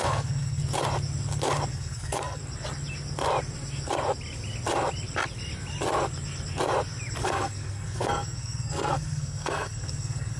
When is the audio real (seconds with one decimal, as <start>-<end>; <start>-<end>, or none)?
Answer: 0.6-1.7; 2.4-7.2